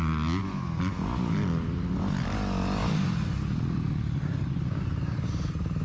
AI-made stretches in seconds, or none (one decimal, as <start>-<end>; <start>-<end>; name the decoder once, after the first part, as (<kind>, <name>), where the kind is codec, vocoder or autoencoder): 0.4-1.9 (vocoder, BigVGAN v2); 2.8-4.4